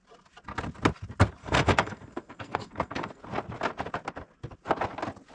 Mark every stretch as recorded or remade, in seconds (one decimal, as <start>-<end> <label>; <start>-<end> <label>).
0.0-1.4 recorded; 1.4-3.2 remade; 3.2-5.3 recorded

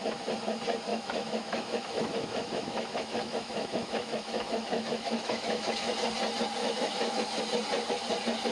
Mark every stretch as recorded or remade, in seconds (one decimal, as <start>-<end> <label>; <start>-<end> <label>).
0.0-0.9 recorded; 0.9-5.9 remade; 5.9-6.6 recorded; 6.6-7.4 remade; 7.4-8.5 recorded

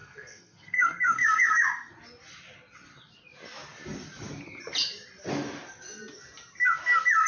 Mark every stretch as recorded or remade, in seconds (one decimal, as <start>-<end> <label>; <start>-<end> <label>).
0.0-1.9 remade; 1.9-7.3 recorded